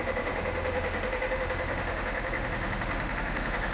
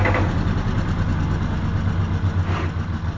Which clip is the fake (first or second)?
first